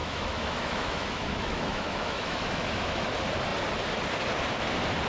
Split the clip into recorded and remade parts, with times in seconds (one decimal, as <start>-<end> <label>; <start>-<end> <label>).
0.0-3.1 remade; 3.1-5.1 recorded